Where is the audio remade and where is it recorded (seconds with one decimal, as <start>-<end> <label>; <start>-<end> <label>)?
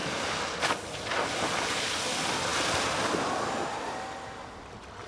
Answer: 0.0-5.1 recorded